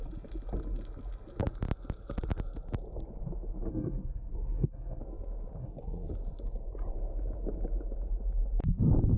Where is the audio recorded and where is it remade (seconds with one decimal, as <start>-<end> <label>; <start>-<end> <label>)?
0.0-3.7 recorded; 3.7-5.0 remade; 5.0-5.6 recorded; 5.6-6.1 remade; 6.1-9.2 recorded